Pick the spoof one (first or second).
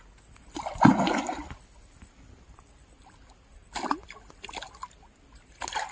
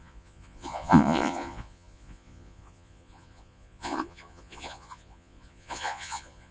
second